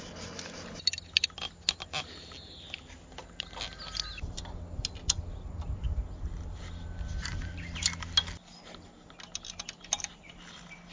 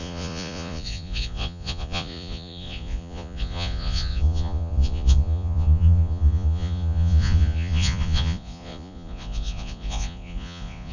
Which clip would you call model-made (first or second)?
second